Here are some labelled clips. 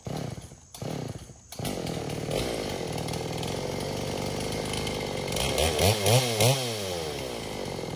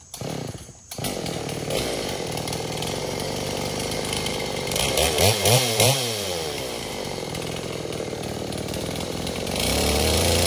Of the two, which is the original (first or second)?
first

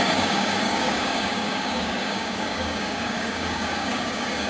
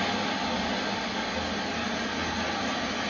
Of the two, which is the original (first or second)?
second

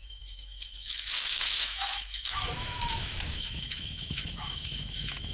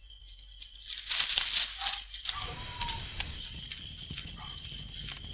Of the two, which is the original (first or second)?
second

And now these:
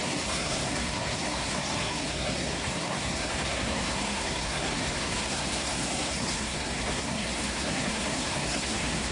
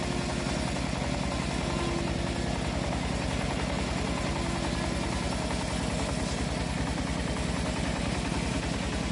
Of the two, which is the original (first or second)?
second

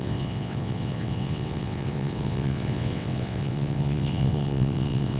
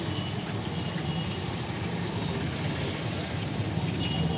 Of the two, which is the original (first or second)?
second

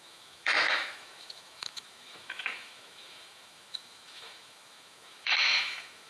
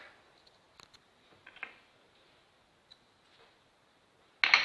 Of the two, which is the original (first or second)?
second